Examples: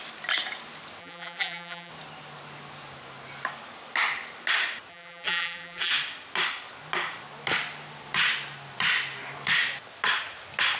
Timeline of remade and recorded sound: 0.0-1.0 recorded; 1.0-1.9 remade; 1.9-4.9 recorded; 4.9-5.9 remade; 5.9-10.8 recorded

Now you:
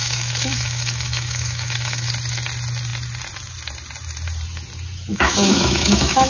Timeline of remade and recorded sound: 0.0-2.1 remade; 2.1-5.1 recorded; 5.1-6.3 remade